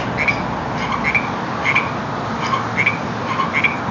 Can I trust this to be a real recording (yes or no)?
yes